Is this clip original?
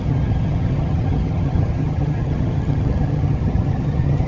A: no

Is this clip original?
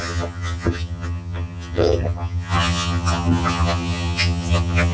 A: no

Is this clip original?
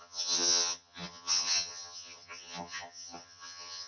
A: no